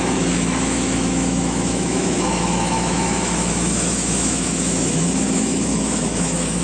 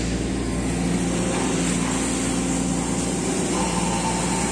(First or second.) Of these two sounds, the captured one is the second